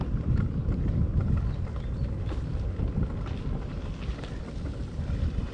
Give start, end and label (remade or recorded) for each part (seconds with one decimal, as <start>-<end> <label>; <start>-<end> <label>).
0.0-1.1 remade; 1.1-4.4 recorded; 4.4-5.5 remade